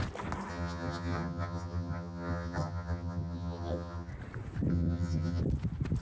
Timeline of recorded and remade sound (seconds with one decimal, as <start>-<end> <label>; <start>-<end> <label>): 0.0-0.5 recorded; 0.5-4.1 remade; 4.1-4.7 recorded; 4.7-5.4 remade; 5.4-6.0 recorded